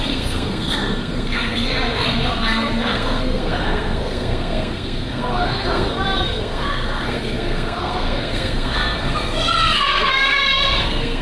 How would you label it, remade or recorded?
remade